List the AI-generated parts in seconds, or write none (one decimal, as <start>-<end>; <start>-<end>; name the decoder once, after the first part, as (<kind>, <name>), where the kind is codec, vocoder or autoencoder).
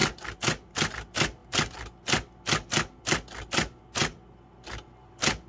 none